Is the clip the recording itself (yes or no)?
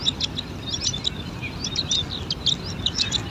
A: yes